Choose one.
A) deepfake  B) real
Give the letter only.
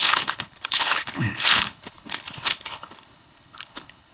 A